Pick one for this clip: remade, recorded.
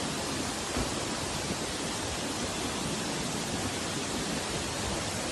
recorded